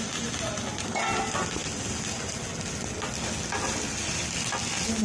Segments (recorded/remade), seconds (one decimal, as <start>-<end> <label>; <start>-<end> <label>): 0.0-5.0 recorded